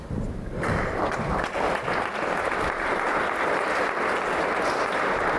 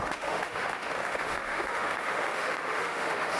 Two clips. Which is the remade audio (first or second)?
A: second